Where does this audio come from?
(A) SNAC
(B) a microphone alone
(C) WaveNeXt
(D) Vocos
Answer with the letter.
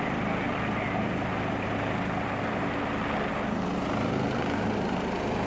B